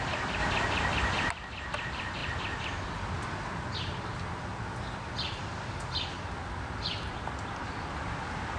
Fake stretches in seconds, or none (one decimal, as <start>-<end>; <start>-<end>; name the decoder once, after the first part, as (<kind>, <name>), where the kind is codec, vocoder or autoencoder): none

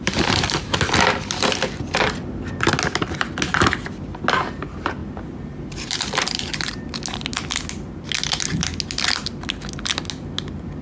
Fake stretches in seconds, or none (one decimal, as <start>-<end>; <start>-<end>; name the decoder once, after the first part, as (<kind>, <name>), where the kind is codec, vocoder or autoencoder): none

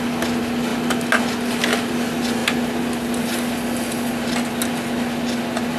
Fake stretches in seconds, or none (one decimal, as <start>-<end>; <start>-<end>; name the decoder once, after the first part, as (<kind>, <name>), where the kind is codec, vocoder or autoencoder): none

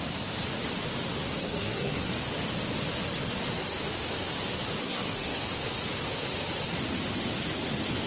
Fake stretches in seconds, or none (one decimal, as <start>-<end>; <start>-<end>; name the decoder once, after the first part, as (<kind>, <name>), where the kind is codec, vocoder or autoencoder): 1.4-2.1 (codec, SNAC); 4.8-5.4

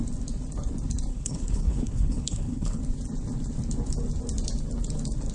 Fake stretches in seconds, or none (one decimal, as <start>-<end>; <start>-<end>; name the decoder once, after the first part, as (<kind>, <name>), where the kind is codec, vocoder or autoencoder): 1.1-2.8 (codec, HILCodec)